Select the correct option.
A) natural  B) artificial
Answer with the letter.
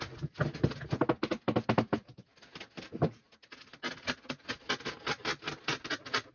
A